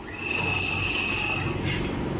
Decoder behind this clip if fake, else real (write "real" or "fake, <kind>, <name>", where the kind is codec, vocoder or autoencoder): real